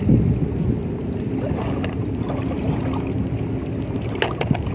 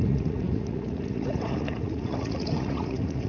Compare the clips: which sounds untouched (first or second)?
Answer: first